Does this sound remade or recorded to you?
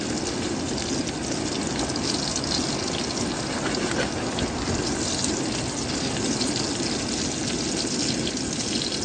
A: recorded